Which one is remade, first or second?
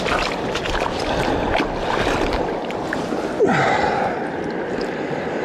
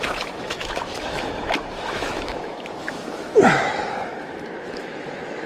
second